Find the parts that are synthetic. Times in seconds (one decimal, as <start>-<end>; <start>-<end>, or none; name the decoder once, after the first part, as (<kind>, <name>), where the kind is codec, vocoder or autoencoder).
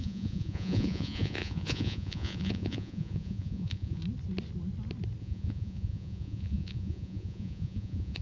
0.0-4.0 (vocoder, Vocos); 5.2-8.2